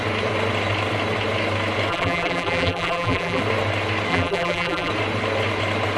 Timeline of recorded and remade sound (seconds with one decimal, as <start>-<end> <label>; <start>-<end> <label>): 0.0-1.9 recorded; 1.9-3.4 remade; 3.4-4.1 recorded; 4.1-4.9 remade; 4.9-6.0 recorded